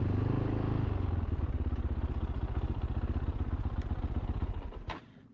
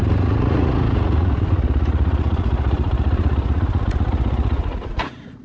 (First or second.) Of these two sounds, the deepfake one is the second